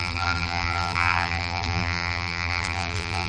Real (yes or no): no